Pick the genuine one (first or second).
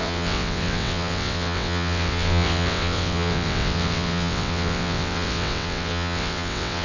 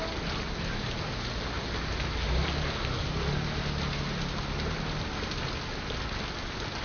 second